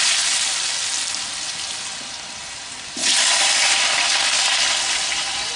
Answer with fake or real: real